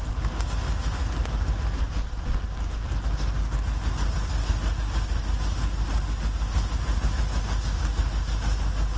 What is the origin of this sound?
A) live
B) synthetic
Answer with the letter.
A